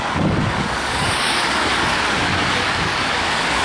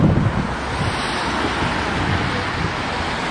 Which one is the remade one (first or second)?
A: first